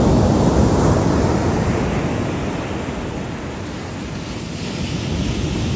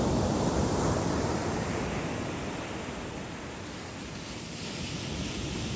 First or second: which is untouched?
first